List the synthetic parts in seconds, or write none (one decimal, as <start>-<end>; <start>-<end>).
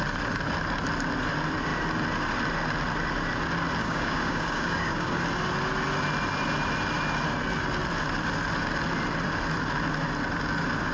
3.8-5.2